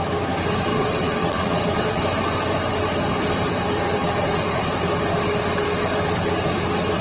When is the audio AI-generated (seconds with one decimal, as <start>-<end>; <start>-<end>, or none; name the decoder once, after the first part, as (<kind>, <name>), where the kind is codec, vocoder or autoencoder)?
0.7-2.0 (vocoder, WaveNeXt)